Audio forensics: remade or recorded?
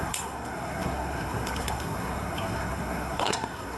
remade